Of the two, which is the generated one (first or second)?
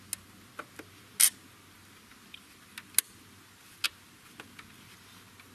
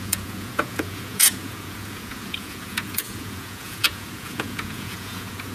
second